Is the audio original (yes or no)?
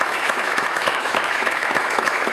no